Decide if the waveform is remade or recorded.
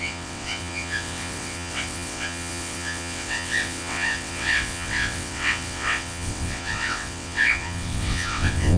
remade